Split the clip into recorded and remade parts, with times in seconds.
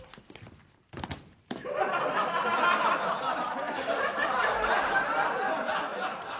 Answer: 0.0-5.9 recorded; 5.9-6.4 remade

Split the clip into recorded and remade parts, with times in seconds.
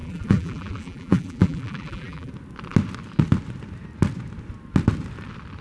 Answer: 0.0-2.3 remade; 2.3-5.6 recorded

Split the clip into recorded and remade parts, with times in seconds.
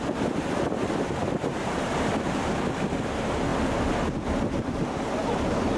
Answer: 0.0-5.8 remade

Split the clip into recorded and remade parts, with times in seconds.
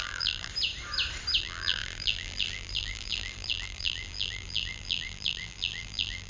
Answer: 0.0-0.5 remade; 0.5-1.4 recorded; 1.4-6.3 remade